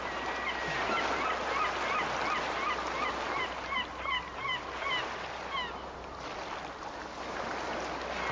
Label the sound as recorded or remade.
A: recorded